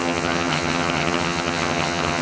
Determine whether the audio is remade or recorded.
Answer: remade